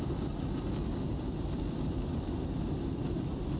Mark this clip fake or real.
real